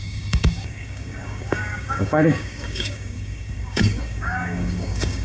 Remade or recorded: remade